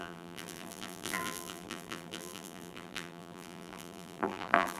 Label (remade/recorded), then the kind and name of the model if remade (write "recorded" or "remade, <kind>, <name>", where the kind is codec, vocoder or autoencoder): remade, vocoder, BigVGAN v2